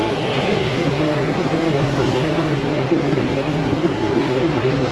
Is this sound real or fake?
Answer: fake